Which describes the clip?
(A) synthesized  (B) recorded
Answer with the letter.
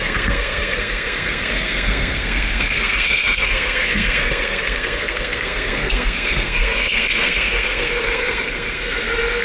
A